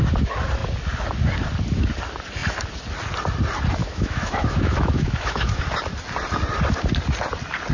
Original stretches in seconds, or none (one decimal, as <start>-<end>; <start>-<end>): 0.0-3.8; 5.6-7.7